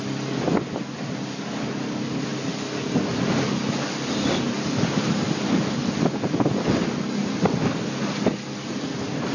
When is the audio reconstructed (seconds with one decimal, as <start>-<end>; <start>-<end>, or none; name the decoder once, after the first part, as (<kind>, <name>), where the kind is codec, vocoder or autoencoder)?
none